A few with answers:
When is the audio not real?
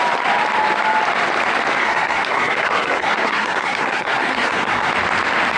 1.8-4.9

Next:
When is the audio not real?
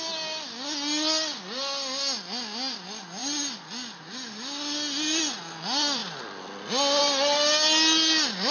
none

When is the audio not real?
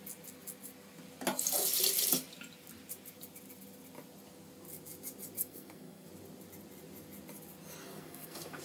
5.4-6.1; 7.8-8.6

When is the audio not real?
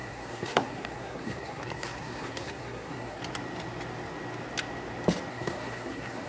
0.0-3.2; 5.3-6.3